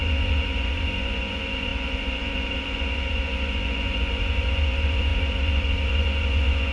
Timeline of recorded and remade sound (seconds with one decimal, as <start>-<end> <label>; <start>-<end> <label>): 0.0-6.7 remade